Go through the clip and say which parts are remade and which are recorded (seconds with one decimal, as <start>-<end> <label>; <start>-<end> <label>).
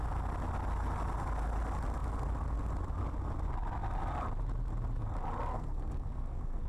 0.0-5.5 recorded; 5.5-6.7 remade